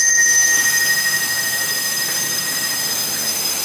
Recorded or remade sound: remade